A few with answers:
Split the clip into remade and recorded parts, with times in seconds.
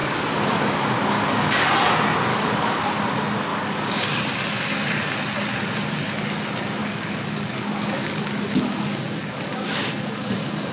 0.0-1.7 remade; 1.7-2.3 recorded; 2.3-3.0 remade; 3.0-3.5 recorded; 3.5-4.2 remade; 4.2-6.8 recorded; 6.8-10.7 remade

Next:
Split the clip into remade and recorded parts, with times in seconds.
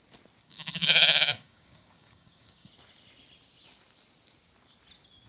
0.0-0.4 recorded; 0.4-2.7 remade; 2.7-5.3 recorded